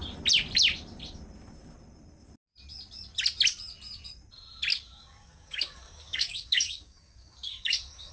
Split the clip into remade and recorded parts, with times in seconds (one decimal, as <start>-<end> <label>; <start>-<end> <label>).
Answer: 0.0-4.7 recorded; 4.7-8.1 remade